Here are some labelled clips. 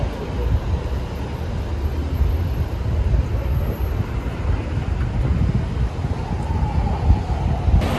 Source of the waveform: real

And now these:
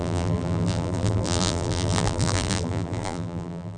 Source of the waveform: fake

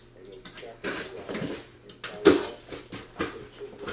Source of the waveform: real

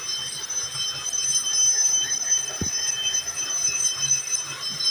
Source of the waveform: real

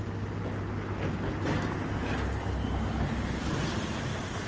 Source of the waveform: real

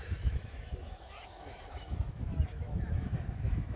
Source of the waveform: fake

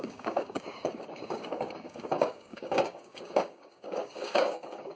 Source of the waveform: fake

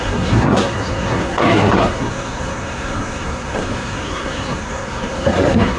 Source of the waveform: fake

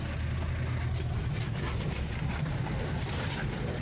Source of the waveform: real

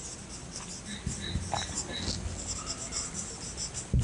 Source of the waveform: real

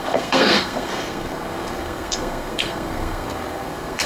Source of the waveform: fake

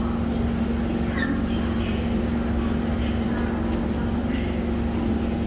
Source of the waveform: real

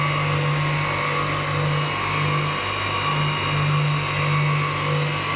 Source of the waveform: real